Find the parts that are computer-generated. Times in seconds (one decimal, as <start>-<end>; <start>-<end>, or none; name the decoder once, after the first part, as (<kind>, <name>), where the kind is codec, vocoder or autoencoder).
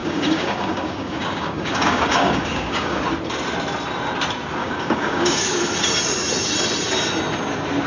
0.0-3.0 (codec, DAC); 4.6-5.6